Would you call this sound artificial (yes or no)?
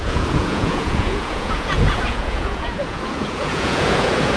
yes